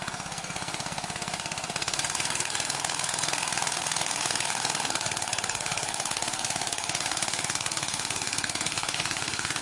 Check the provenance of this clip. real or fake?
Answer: fake